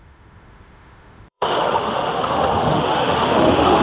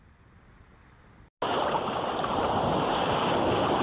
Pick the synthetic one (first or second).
first